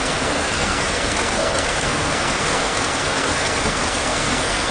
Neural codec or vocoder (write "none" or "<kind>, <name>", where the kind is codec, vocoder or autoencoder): codec, SNAC